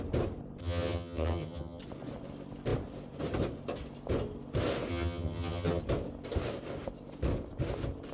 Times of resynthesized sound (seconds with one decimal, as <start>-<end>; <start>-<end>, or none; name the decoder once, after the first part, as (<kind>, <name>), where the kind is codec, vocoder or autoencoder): 0.6-1.8 (vocoder, HiFi-GAN); 4.9-5.8